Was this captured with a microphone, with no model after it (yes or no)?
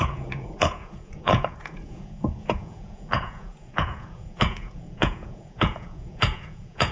no